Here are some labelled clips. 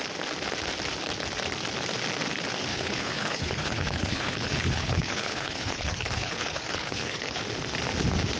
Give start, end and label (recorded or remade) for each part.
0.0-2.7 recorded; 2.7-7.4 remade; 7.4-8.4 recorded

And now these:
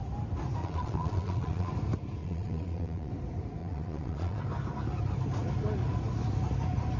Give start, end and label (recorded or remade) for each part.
0.0-0.6 recorded; 0.6-1.7 remade; 1.7-2.2 recorded; 2.2-3.1 remade; 3.1-3.6 recorded; 3.6-4.4 remade; 4.4-7.0 recorded

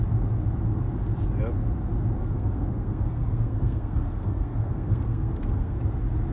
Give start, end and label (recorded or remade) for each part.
0.0-2.2 recorded; 2.2-5.8 remade; 5.8-6.3 recorded

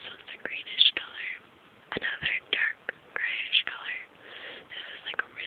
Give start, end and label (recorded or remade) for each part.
0.0-5.5 recorded

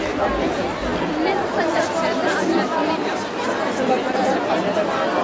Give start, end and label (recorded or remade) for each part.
0.0-5.2 recorded

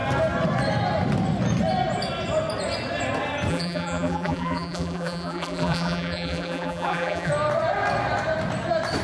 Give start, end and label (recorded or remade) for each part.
0.0-3.5 recorded; 3.5-7.3 remade; 7.3-9.0 recorded

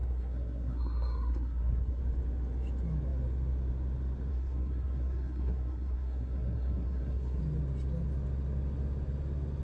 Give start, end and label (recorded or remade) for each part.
0.0-2.0 remade; 2.0-4.3 recorded; 4.3-7.4 remade; 7.4-9.6 recorded